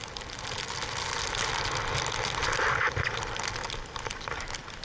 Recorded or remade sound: recorded